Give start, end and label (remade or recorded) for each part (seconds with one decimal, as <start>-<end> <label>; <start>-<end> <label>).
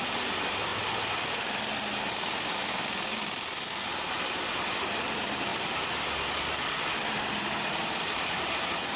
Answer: 0.0-0.7 remade; 0.7-4.3 recorded; 4.3-5.5 remade; 5.5-6.9 recorded; 6.9-9.0 remade